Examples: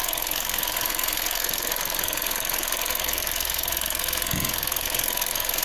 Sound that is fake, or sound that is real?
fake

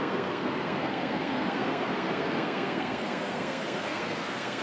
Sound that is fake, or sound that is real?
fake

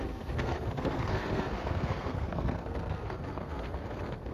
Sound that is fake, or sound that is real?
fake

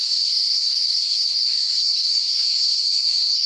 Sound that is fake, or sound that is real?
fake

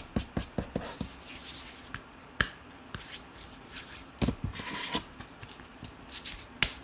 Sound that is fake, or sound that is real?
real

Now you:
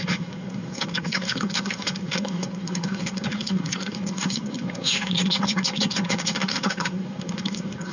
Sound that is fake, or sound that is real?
fake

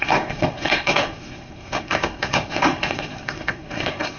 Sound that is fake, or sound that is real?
fake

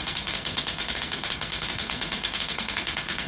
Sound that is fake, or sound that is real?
fake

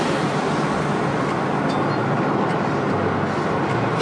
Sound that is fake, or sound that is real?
real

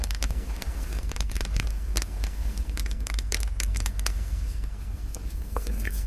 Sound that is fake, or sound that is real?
fake